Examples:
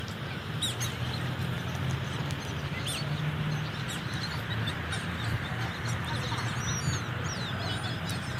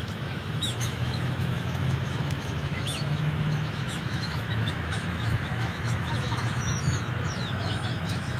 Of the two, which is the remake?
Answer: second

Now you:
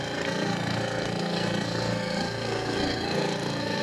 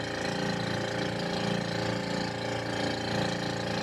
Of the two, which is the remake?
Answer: first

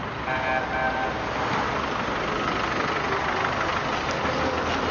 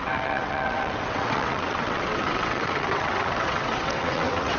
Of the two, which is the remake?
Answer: second